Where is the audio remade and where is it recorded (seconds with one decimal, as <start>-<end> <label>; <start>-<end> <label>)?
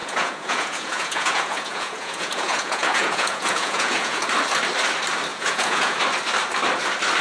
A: 0.0-4.3 remade; 4.3-5.3 recorded; 5.3-6.0 remade; 6.0-7.2 recorded